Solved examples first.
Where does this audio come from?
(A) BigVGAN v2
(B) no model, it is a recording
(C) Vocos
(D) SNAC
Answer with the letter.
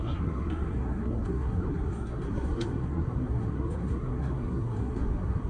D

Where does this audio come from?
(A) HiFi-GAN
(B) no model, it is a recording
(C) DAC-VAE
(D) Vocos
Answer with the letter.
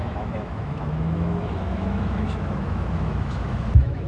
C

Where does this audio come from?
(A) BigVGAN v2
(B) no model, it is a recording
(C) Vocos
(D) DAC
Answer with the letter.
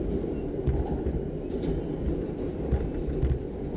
B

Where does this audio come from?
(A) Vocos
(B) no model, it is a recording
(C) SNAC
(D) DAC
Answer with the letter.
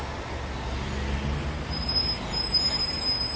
B